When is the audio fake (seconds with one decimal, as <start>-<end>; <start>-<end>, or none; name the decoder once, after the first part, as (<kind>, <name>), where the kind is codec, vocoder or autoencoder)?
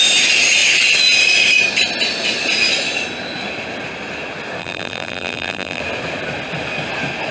4.6-5.8 (vocoder, BigVGAN v2)